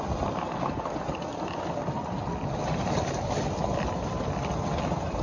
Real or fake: real